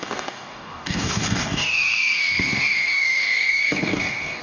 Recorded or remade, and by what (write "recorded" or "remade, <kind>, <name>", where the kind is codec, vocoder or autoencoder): remade, codec, DAC